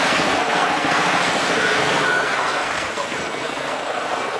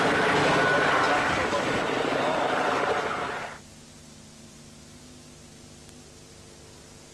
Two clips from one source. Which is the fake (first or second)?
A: first